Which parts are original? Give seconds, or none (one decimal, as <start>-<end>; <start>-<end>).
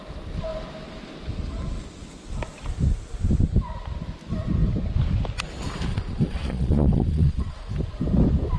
0.0-5.9; 7.7-8.6